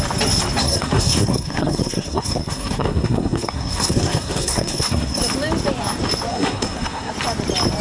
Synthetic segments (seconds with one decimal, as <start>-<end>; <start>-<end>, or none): 0.6-5.2; 6.3-7.1